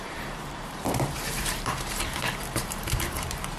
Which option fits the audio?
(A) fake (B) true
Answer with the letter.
A